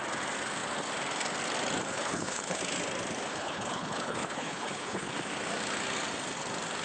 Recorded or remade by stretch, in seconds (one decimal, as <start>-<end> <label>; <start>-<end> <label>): 0.0-1.9 recorded; 1.9-2.6 remade; 2.6-3.3 recorded; 3.3-5.1 remade; 5.1-6.8 recorded